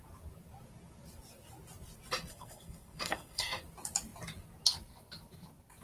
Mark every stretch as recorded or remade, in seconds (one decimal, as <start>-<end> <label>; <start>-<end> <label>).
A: 0.0-2.3 recorded; 2.3-3.6 remade; 3.6-5.8 recorded